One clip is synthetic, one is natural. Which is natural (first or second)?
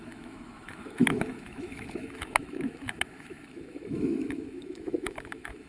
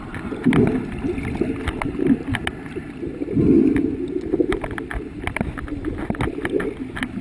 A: second